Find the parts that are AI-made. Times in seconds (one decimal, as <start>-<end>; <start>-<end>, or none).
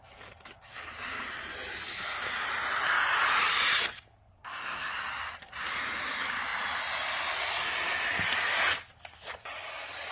4.3-4.9